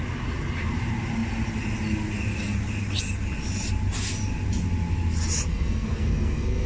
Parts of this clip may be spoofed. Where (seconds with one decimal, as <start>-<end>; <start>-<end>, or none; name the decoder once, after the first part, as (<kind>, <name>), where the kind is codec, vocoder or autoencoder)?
5.5-6.7 (codec, SNAC)